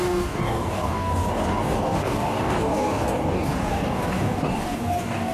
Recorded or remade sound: remade